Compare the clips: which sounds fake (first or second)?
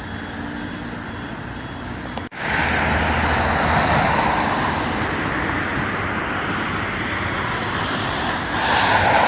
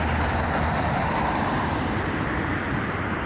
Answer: second